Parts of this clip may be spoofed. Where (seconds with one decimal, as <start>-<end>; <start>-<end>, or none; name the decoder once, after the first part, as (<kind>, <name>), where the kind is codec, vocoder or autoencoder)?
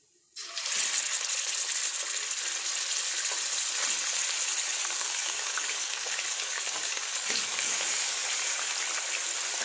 4.7-8.7 (codec, DAC)